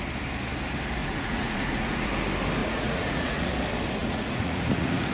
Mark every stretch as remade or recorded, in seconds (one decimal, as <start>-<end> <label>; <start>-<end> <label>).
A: 0.0-1.0 recorded; 1.0-2.1 remade; 2.1-2.6 recorded; 2.6-3.5 remade; 3.5-4.0 recorded; 4.0-5.1 remade